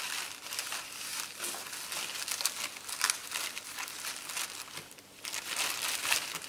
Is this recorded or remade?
recorded